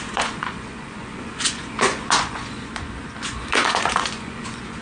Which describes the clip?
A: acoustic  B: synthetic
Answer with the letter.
B